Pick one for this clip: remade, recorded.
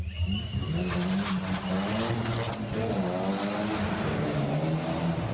recorded